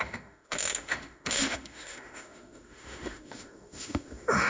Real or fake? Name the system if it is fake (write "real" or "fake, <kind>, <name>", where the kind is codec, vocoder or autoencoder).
fake, autoencoder, DAC-VAE